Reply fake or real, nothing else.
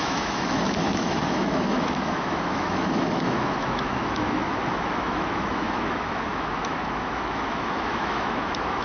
fake